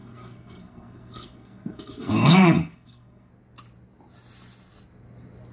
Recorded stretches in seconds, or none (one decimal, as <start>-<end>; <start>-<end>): 3.3-5.5